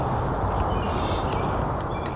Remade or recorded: recorded